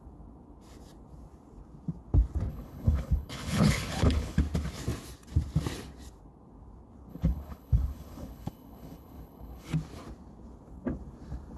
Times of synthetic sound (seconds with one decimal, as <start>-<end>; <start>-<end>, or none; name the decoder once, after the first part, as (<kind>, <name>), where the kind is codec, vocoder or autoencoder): 2.5-4.4 (codec, HILCodec); 7.1-9.7